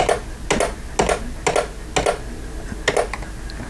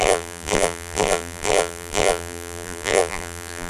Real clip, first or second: first